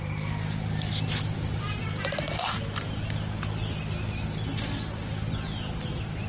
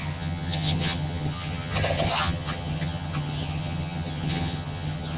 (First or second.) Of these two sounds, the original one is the first